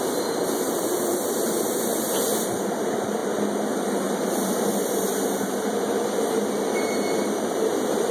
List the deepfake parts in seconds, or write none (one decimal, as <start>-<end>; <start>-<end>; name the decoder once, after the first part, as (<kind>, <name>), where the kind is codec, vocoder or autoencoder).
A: 0.0-1.9 (vocoder, BigVGAN v2); 2.6-8.1